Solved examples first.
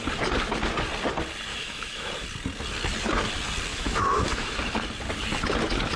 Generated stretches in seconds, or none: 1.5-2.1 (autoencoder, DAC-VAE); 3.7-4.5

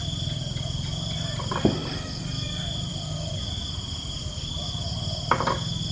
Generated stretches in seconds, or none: none

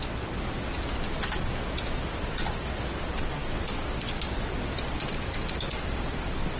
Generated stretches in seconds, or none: none

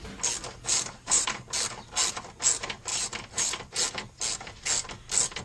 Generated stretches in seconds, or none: 0.7-1.4 (vocoder, BigVGAN v2); 2.9-3.6

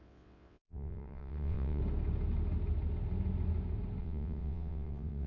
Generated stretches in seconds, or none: 0.0-1.8 (vocoder, WaveNeXt); 4.0-5.3

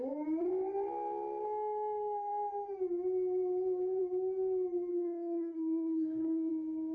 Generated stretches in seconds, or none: 4.9-6.5 (codec, SNAC)

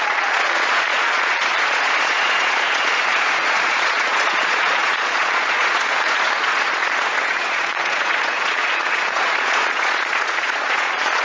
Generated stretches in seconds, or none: 0.0-11.2 (vocoder, Vocos)